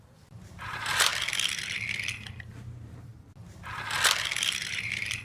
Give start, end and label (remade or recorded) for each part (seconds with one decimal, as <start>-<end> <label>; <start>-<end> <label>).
0.0-1.1 remade; 1.1-2.1 recorded; 2.1-3.1 remade; 3.1-4.7 recorded; 4.7-5.2 remade